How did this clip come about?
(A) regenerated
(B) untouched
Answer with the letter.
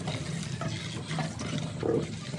B